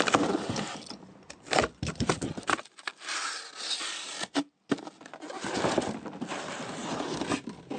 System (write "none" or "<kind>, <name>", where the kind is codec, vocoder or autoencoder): none